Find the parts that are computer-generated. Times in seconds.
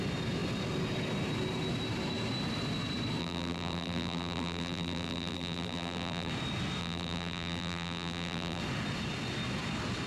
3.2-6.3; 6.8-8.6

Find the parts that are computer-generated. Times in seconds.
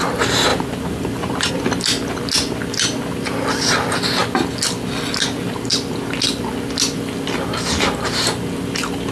0.5-1.5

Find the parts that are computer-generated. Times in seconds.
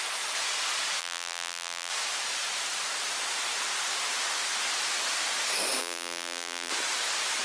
1.0-1.9; 5.8-6.7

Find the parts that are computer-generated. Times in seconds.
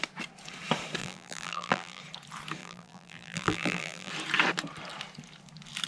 1.0-2.0; 2.6-4.1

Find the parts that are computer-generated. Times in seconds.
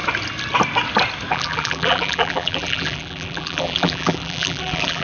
1.3-5.0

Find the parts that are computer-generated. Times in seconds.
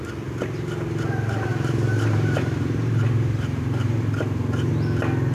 1.5-4.7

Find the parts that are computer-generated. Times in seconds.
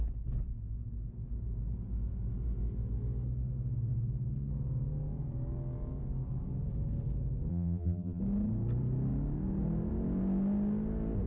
7.5-8.2